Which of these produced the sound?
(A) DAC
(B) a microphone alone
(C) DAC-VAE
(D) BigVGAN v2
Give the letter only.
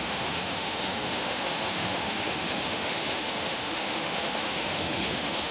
C